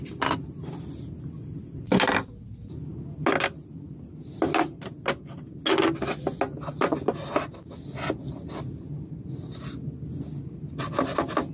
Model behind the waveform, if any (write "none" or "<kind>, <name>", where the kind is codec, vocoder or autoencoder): none